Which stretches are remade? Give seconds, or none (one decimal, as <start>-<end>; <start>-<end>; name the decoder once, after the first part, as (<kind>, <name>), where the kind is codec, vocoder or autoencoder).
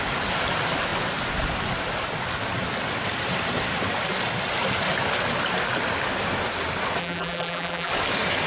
7.0-7.9 (vocoder, BigVGAN v2)